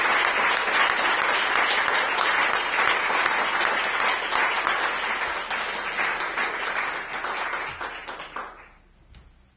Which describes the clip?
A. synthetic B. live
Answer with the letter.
B